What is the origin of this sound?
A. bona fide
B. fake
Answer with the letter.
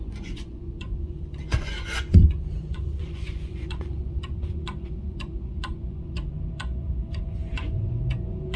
B